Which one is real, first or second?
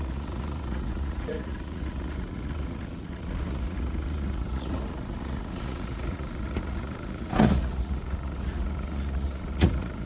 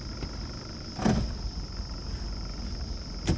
second